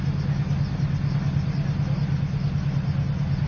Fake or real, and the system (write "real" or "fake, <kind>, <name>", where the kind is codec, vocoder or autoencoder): real